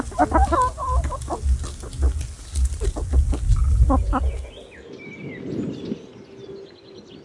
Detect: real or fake real